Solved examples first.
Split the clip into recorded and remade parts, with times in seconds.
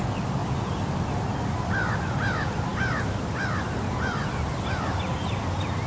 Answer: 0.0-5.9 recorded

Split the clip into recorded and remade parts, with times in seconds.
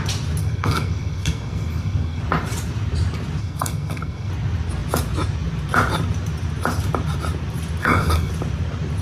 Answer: 0.0-0.4 recorded; 0.4-2.2 remade; 2.2-3.4 recorded; 3.4-4.3 remade; 4.3-7.8 recorded; 7.8-8.3 remade; 8.3-9.0 recorded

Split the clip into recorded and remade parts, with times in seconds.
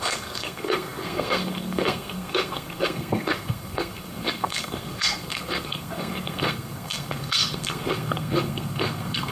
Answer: 0.0-9.3 remade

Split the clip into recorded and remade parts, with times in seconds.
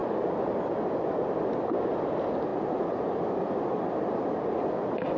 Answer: 0.0-5.2 recorded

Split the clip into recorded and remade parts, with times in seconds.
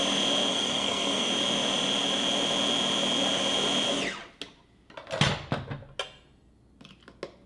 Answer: 0.0-0.5 recorded; 0.5-1.3 remade; 1.3-7.5 recorded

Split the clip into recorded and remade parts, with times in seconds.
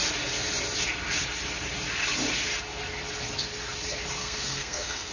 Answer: 0.0-4.2 recorded; 4.2-5.1 remade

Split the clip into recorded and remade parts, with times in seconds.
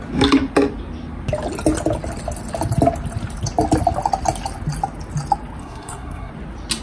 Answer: 0.0-5.6 recorded; 5.6-6.3 remade; 6.3-6.8 recorded